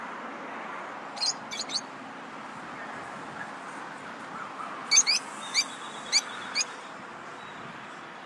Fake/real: real